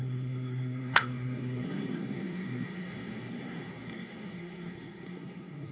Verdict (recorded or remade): remade